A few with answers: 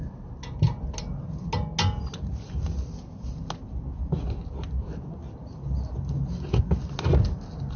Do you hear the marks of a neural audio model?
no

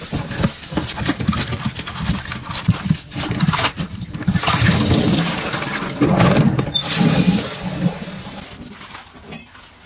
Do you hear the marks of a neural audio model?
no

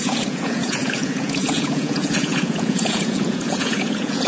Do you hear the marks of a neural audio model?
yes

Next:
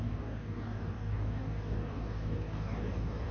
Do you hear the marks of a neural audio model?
yes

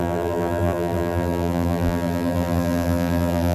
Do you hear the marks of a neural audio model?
yes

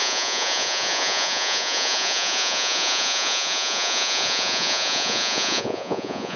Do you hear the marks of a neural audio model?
yes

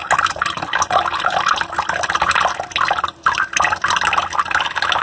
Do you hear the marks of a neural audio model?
no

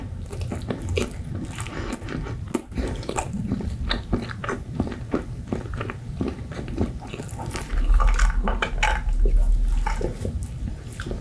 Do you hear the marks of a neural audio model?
no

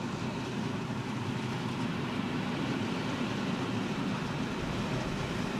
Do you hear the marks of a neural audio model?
no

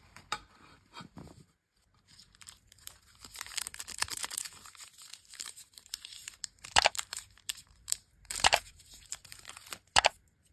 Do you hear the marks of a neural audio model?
yes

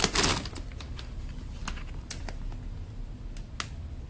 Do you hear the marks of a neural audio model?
no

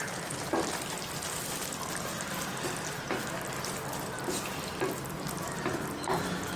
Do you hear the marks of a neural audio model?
no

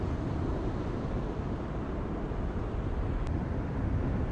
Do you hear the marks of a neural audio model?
no